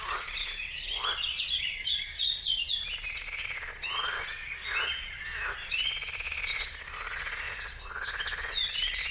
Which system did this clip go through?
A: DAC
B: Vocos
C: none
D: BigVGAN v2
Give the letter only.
B